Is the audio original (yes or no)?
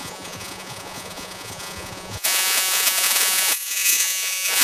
no